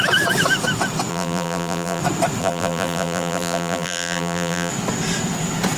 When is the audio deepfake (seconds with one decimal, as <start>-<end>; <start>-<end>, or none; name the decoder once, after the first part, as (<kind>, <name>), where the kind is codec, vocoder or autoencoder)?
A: 1.1-2.0 (vocoder, BigVGAN v2); 2.4-4.7